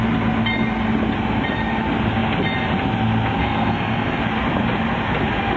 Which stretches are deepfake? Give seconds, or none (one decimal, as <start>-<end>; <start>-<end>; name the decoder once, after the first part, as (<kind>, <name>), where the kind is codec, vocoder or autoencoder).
3.4-4.2 (codec, SNAC)